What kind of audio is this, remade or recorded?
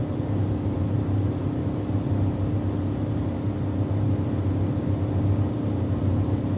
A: recorded